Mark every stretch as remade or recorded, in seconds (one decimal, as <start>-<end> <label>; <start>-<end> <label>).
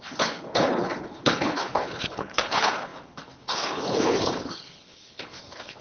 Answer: 0.0-5.8 remade